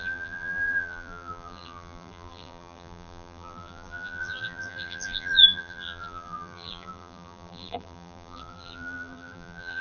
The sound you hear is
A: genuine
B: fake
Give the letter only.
B